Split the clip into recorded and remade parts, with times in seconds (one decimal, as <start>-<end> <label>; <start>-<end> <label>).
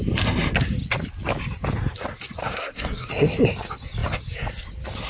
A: 0.0-2.4 recorded; 2.4-3.1 remade; 3.1-5.1 recorded